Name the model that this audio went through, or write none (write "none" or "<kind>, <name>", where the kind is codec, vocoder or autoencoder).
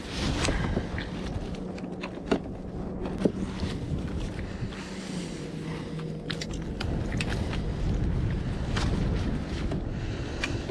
none